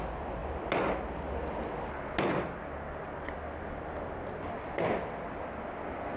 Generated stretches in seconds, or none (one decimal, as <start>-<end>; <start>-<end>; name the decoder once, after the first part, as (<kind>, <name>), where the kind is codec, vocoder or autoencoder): none